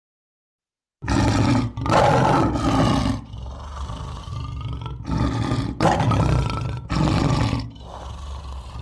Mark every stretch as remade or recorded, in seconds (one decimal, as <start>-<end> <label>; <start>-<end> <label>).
0.0-8.8 recorded